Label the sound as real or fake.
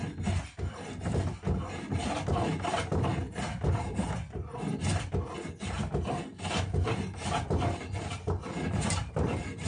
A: real